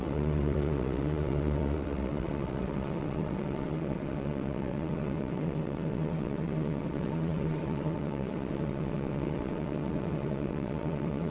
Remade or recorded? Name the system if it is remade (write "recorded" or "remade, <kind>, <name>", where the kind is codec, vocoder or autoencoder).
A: remade, vocoder, WaveNeXt